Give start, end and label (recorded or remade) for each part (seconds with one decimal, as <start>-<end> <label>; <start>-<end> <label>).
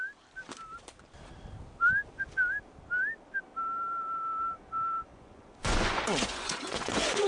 0.0-5.1 recorded; 5.1-7.3 remade